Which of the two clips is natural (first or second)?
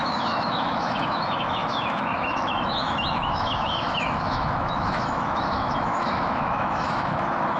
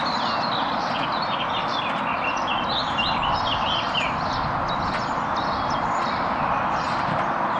second